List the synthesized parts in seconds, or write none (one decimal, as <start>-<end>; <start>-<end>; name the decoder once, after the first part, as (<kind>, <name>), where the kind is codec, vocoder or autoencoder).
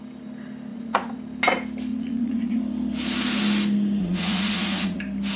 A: 0.7-1.2 (vocoder, Vocos); 1.9-2.6; 4.0-5.0